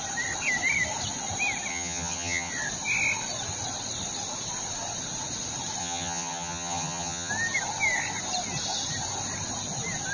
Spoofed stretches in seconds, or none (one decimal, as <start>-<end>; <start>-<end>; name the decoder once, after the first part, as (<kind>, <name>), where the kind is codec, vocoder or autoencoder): 1.7-2.5 (vocoder, HiFi-GAN); 5.8-7.3